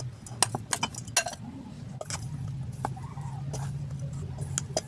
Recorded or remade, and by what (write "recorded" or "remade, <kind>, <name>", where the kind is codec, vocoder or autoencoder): recorded